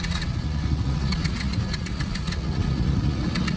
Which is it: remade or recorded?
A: remade